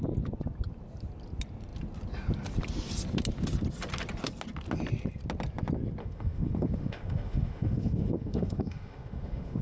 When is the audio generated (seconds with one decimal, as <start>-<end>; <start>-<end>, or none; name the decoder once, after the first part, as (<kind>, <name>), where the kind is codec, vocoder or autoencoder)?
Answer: 6.0-9.6 (autoencoder, DAC-VAE)